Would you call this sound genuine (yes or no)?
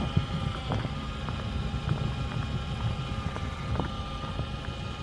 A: yes